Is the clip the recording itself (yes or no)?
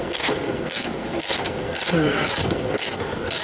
no